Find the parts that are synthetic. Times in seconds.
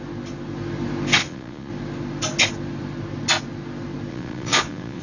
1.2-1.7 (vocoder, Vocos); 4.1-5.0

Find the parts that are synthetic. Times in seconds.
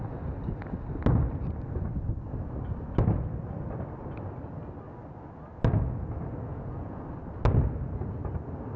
6.5-7.0 (vocoder, Vocos)